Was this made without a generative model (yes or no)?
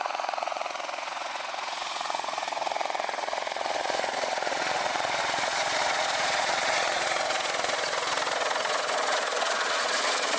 no